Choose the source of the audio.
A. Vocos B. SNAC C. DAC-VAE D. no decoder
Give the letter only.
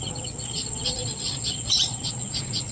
A